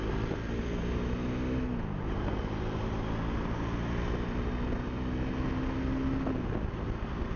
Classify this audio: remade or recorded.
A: recorded